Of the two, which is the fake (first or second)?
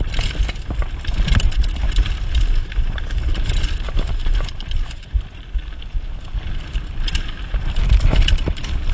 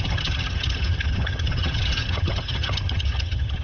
second